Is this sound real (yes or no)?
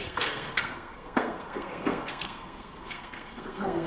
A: no